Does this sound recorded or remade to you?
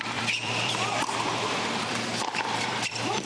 remade